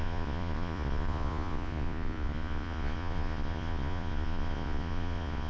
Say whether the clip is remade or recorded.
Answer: remade